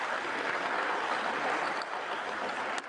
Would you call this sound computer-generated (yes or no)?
no